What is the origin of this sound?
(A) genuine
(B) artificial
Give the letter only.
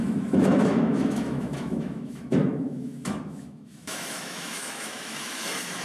B